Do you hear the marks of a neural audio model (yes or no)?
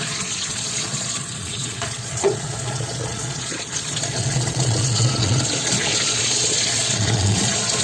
yes